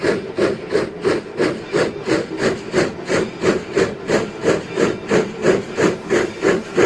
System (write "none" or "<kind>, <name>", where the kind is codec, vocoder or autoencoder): none